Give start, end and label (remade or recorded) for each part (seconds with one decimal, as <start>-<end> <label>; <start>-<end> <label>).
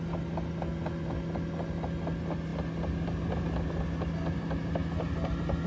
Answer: 0.0-5.7 recorded